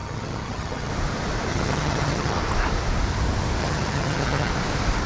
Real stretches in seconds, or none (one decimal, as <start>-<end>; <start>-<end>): 0.9-1.5; 2.4-3.6; 4.5-5.1